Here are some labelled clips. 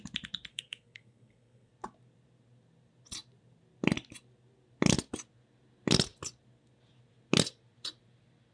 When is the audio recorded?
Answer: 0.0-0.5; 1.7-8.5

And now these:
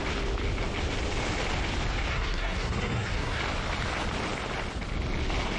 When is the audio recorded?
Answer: 0.0-2.1; 3.4-5.6